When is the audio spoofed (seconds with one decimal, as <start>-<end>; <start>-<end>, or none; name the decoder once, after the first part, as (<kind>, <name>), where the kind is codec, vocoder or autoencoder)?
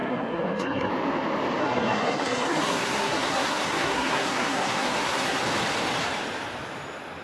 0.0-0.9 (codec, SNAC); 1.6-5.4